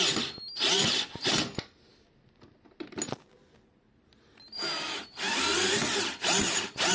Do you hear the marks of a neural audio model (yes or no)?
no